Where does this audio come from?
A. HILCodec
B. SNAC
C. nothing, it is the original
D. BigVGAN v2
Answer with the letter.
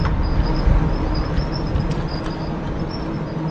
C